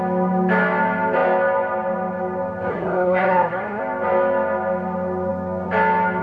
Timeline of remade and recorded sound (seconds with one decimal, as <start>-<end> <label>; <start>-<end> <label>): 0.0-2.7 recorded; 2.7-3.8 remade; 3.8-6.2 recorded